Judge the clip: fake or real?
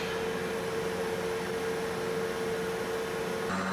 real